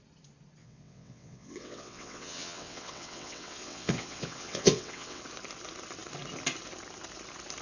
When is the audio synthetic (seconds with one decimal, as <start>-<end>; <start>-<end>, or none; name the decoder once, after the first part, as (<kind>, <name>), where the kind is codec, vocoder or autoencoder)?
0.6-5.2 (vocoder, WaveNeXt)